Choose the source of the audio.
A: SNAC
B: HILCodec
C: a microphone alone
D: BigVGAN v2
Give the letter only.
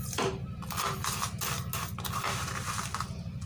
C